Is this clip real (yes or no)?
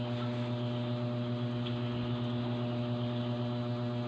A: yes